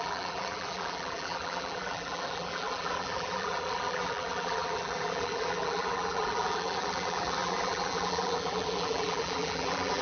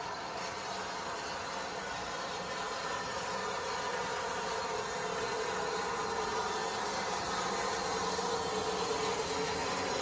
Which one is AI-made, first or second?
first